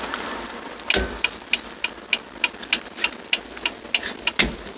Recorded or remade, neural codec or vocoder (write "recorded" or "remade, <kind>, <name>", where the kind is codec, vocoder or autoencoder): recorded